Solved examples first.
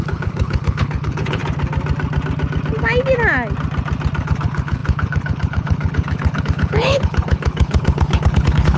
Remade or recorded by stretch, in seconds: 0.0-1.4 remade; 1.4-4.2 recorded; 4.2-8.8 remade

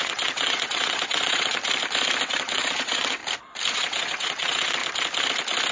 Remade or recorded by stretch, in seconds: 0.0-1.6 remade; 1.6-2.2 recorded; 2.2-3.2 remade; 3.2-3.7 recorded; 3.7-4.8 remade; 4.8-5.7 recorded

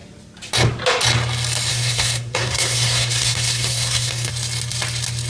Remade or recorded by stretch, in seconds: 0.0-1.7 recorded; 1.7-4.3 remade; 4.3-5.3 recorded

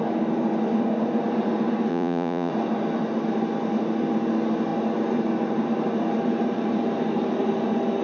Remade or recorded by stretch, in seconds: 0.0-1.9 recorded; 1.9-2.5 remade; 2.5-8.0 recorded

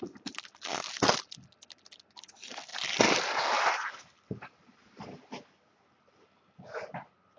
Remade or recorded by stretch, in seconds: 0.0-7.4 recorded

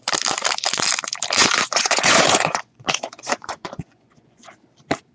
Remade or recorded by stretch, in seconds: 0.0-1.4 recorded; 1.4-4.5 remade; 4.5-5.1 recorded

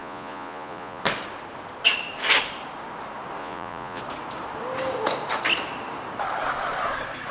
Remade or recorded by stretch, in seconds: 0.0-1.0 remade; 1.0-3.4 recorded; 3.4-4.0 remade; 4.0-7.3 recorded